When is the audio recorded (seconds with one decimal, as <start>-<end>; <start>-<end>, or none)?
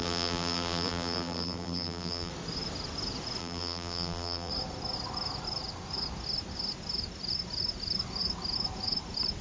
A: 2.3-3.4; 4.5-9.4